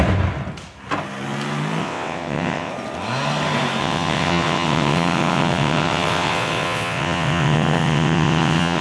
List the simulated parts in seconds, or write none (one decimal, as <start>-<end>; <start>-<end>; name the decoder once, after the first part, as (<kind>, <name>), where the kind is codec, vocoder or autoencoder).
1.8-2.7 (vocoder, WaveNeXt); 3.8-8.8